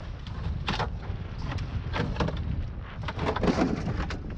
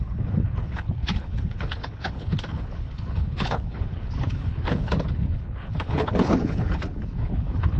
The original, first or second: first